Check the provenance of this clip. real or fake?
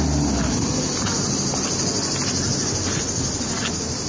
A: real